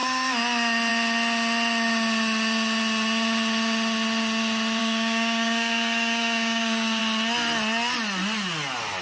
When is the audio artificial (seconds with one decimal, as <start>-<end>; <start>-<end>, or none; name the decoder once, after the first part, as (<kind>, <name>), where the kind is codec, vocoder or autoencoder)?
4.8-7.0 (codec, DAC)